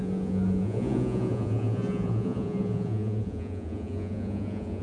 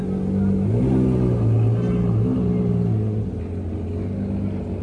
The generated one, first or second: first